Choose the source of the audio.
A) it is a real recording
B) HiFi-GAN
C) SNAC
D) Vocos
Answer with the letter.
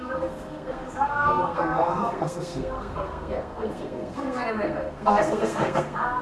C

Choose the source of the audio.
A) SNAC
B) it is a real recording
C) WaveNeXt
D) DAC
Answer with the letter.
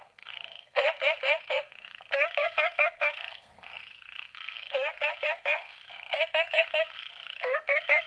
A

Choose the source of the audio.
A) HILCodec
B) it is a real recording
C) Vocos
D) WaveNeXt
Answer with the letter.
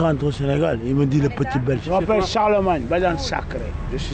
B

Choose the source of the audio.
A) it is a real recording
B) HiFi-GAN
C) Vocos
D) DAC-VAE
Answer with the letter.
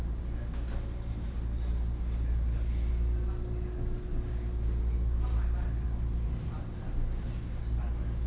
A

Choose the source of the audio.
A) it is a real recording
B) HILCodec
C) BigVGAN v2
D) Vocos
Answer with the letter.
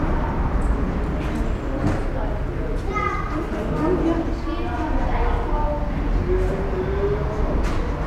A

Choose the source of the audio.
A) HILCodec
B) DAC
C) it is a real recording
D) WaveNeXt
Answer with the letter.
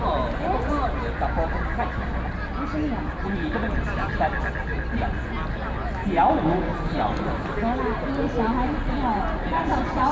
C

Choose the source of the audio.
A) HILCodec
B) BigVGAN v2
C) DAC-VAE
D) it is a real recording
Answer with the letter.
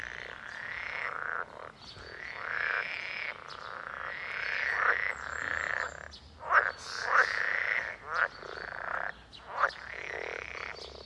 D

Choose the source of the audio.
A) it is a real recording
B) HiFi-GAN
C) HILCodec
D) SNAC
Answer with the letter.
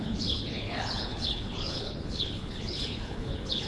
C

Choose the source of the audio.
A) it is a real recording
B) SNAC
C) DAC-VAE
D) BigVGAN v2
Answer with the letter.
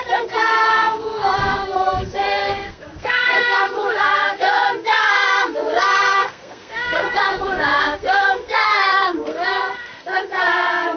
B